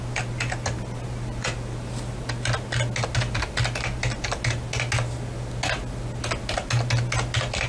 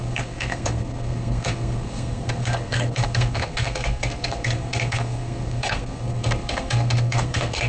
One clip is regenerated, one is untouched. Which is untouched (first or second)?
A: first